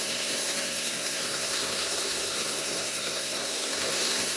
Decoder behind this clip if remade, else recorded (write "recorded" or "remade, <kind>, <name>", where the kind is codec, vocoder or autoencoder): remade, codec, SNAC